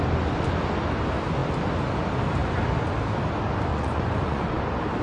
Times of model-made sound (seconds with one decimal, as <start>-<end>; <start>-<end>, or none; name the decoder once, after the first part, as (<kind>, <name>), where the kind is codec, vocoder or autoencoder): 3.7-4.6 (vocoder, Vocos)